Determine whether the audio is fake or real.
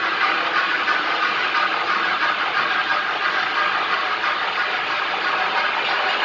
real